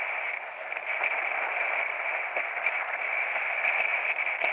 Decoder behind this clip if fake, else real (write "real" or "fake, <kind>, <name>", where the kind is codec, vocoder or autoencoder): real